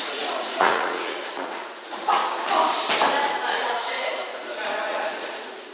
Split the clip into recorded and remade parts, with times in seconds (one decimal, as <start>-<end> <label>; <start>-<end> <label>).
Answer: 0.0-2.2 remade; 2.2-3.5 recorded; 3.5-5.7 remade